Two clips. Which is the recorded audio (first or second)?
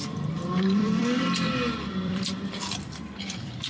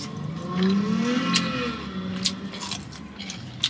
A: second